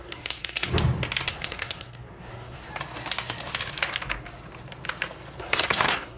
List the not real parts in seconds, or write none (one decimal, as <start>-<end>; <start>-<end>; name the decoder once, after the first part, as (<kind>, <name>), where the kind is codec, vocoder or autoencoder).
0.0-0.7 (codec, SNAC); 1.3-2.7; 5.4-6.2